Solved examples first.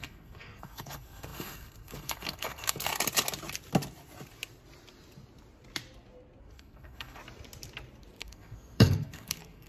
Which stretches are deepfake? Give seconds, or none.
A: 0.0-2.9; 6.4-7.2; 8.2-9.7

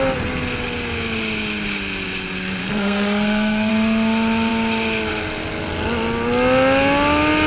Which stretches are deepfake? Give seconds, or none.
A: 2.6-3.7

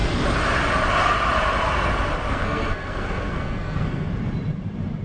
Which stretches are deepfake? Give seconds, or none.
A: 2.3-4.1

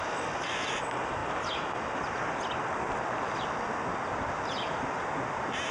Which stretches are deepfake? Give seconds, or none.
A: none

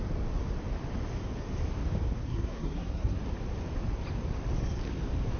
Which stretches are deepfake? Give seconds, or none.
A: 2.2-3.2